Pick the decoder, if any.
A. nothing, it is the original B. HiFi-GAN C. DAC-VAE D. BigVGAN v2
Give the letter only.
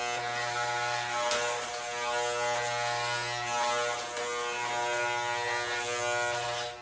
A